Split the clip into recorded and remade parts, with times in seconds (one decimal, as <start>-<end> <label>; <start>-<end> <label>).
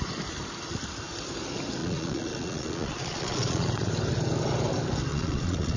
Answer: 0.0-1.8 recorded; 1.8-3.9 remade; 3.9-5.1 recorded; 5.1-5.8 remade